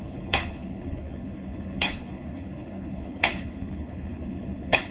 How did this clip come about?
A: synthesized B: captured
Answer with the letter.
A